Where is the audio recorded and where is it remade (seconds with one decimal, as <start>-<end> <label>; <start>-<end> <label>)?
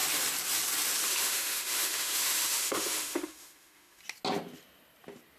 0.0-1.1 recorded; 1.1-4.0 remade; 4.0-5.4 recorded